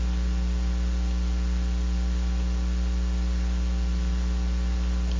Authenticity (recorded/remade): recorded